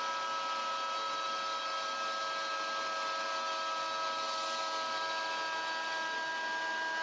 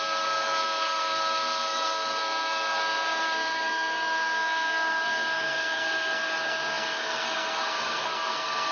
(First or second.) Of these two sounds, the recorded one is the first